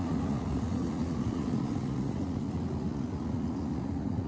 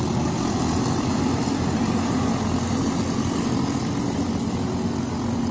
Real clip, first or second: second